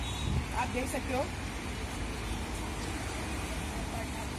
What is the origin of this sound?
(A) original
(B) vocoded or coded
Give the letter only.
A